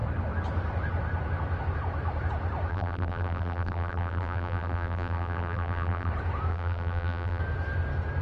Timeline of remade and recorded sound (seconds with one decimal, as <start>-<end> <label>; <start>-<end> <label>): 0.0-2.7 recorded; 2.7-6.1 remade; 6.1-6.5 recorded; 6.5-7.4 remade; 7.4-8.2 recorded